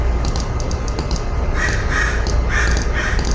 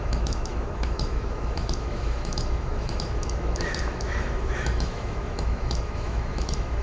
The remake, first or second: second